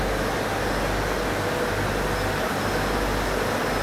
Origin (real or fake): real